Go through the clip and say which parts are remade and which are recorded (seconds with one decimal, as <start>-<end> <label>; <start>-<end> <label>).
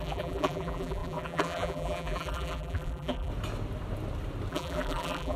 0.0-3.3 remade; 3.3-4.5 recorded; 4.5-5.4 remade